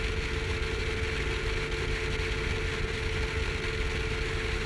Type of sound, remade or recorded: recorded